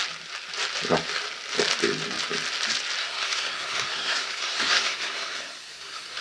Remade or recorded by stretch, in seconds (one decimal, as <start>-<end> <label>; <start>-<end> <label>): 0.0-3.0 recorded; 3.0-6.2 remade